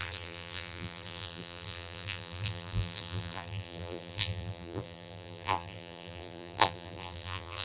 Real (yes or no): no